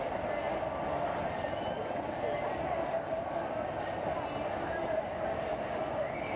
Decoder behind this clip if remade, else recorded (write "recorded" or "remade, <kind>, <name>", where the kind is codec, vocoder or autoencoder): recorded